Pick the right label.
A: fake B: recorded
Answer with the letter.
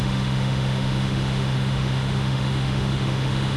A